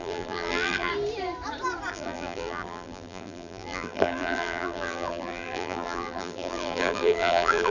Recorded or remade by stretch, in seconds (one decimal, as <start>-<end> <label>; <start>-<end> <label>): 0.0-0.9 remade; 0.9-1.9 recorded; 1.9-7.7 remade